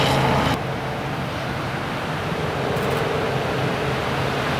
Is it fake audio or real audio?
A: real